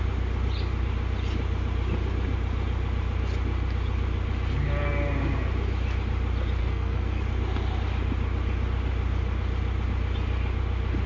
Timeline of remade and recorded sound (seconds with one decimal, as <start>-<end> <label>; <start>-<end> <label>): 0.0-6.6 recorded; 6.6-7.2 remade; 7.2-11.1 recorded